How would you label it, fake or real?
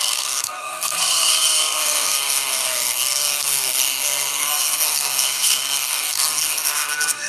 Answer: fake